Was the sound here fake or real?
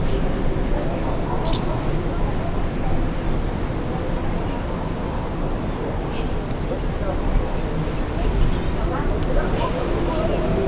real